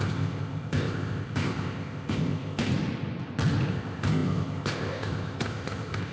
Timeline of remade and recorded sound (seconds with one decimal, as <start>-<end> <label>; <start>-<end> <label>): 0.0-2.7 remade; 2.7-3.7 recorded; 3.7-6.1 remade

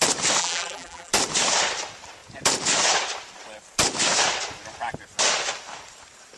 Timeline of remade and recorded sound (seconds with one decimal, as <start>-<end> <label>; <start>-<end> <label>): 0.0-0.4 recorded; 0.4-1.1 remade; 1.1-6.4 recorded

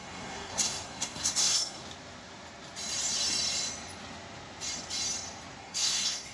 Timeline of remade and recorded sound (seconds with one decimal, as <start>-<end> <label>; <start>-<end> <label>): 0.0-1.8 remade; 1.8-5.6 recorded; 5.6-6.3 remade

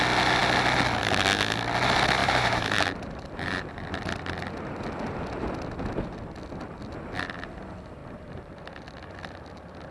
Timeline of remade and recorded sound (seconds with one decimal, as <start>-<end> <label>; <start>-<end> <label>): 0.0-2.2 recorded; 2.2-3.7 remade; 3.7-8.0 recorded; 8.0-8.6 remade; 8.6-9.9 recorded

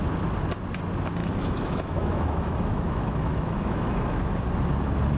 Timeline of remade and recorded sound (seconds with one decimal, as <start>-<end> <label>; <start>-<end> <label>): 0.0-1.2 recorded; 1.2-4.3 remade; 4.3-5.2 recorded

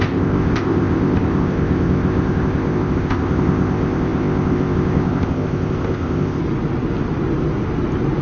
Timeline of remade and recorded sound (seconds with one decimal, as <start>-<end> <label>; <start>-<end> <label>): 0.0-6.4 remade; 6.4-8.2 recorded

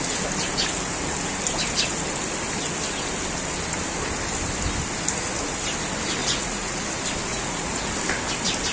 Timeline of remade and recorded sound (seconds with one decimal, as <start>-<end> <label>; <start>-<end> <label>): 0.0-6.2 recorded; 6.2-6.8 remade; 6.8-7.3 recorded; 7.3-7.9 remade; 7.9-8.7 recorded

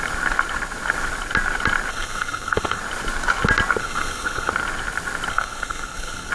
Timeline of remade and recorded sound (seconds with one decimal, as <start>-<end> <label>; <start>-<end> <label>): 0.0-1.9 recorded; 1.9-2.8 remade; 2.8-3.8 recorded; 3.8-4.5 remade; 4.5-5.3 recorded; 5.3-6.3 remade